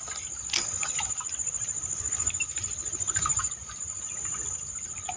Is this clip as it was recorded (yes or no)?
yes